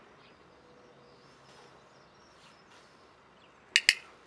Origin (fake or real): real